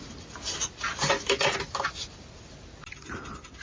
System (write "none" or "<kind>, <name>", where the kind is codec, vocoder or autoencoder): none